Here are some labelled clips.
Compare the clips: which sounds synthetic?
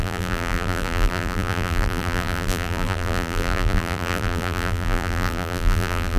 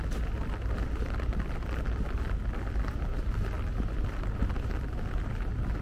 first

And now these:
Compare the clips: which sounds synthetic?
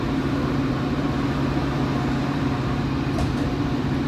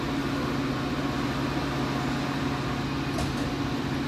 first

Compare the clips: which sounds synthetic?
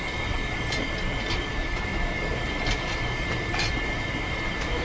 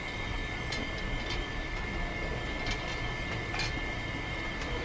first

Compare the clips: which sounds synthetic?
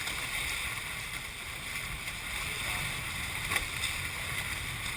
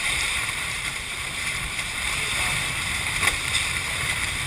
second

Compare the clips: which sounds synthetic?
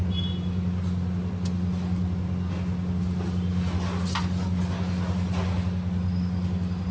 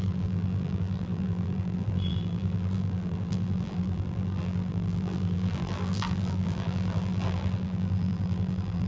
second